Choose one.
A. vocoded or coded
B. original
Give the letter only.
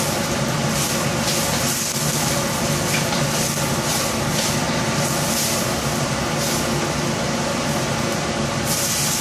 B